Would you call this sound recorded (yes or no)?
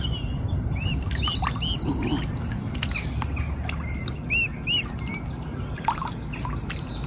yes